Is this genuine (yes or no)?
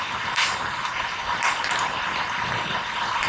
yes